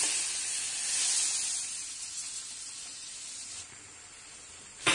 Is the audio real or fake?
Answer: real